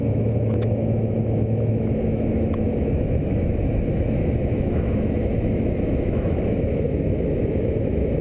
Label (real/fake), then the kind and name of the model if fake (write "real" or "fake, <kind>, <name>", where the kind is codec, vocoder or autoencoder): fake, autoencoder, DAC-VAE